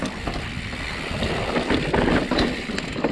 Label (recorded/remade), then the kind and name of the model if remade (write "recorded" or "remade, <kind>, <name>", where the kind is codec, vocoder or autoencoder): recorded